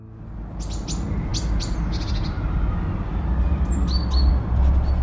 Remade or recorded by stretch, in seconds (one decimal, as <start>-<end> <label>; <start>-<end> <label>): 0.0-5.0 recorded